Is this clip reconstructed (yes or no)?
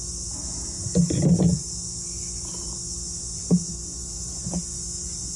no